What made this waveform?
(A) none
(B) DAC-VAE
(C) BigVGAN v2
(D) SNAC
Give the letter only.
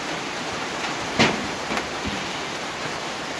C